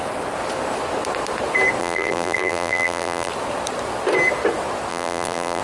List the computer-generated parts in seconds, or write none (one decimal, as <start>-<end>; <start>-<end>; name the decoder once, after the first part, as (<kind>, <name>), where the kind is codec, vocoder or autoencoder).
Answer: 1.8-3.3 (vocoder, BigVGAN v2); 4.9-5.6